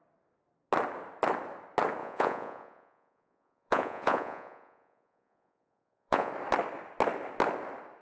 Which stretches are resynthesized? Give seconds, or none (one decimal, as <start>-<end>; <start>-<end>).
2.0-6.3